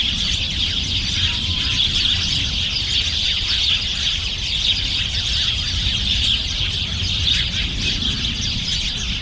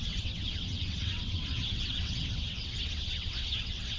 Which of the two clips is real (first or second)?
first